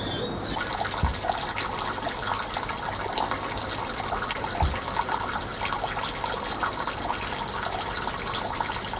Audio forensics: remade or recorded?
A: recorded